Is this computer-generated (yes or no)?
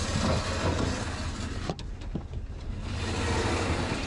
no